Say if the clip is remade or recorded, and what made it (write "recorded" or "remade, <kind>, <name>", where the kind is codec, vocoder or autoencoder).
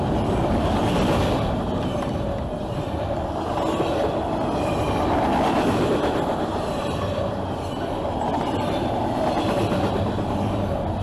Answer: recorded